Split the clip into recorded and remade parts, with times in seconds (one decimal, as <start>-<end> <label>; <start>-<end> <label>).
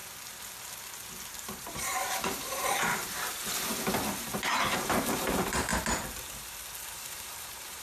0.0-1.3 recorded; 1.3-3.4 remade; 3.4-4.5 recorded; 4.5-5.7 remade; 5.7-6.9 recorded; 6.9-7.8 remade